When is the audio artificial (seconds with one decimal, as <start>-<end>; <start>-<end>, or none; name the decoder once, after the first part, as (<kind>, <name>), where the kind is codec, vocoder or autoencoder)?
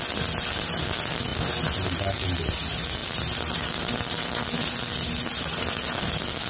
none